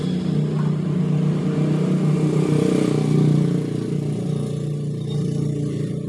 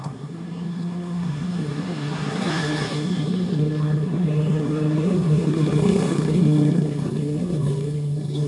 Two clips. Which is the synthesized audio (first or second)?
second